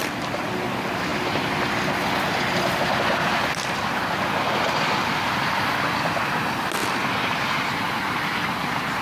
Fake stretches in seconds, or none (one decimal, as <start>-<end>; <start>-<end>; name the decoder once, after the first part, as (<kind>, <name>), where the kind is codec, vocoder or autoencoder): none